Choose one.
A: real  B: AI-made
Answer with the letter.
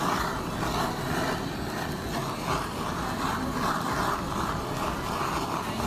A